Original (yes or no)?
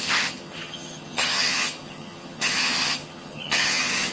no